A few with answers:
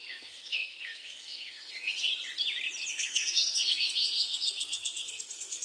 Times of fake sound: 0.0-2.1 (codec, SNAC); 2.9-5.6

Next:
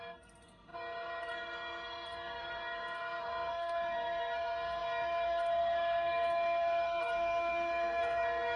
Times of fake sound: 0.0-8.6 (codec, SNAC)

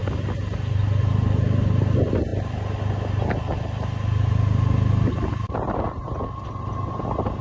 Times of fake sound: none

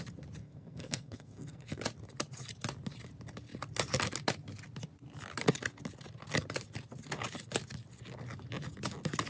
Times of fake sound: 0.4-1.8 (codec, SNAC)

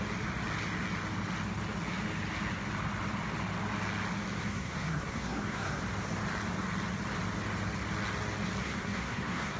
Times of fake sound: 4.4-5.8 (codec, SNAC); 8.6-9.6

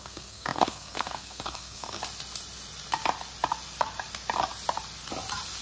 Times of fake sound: 0.0-2.0 (codec, SNAC)